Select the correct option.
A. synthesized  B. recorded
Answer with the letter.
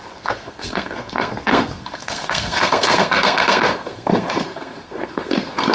A